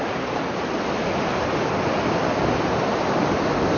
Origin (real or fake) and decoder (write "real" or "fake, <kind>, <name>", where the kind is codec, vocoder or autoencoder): real